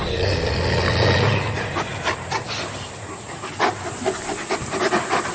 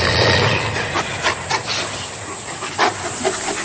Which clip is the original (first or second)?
first